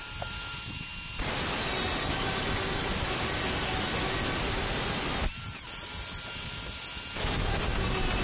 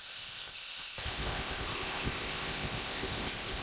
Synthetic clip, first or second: second